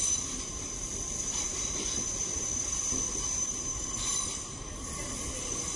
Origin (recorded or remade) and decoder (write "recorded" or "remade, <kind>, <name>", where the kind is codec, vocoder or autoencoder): remade, vocoder, BigVGAN v2